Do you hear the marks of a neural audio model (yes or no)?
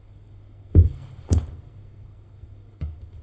yes